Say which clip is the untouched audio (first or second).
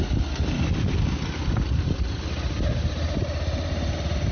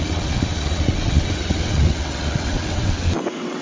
first